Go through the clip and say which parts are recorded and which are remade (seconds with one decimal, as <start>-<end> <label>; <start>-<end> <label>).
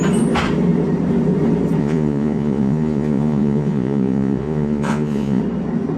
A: 0.0-1.8 recorded; 1.8-5.4 remade; 5.4-6.0 recorded